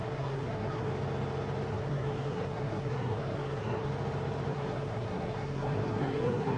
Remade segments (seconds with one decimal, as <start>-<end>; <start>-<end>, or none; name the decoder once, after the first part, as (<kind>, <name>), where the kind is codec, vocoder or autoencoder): 0.0-0.9 (codec, SNAC); 1.7-3.9; 4.5-6.6